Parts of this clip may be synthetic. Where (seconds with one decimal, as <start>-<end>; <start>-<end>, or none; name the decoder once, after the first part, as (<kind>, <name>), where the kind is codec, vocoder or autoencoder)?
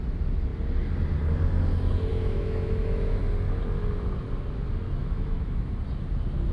2.1-3.2 (autoencoder, DAC-VAE); 5.0-5.7